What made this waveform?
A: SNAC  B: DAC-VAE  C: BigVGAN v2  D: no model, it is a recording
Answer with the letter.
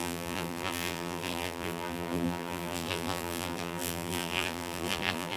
C